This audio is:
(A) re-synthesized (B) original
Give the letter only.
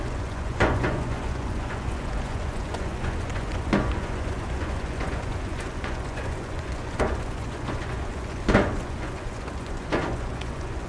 A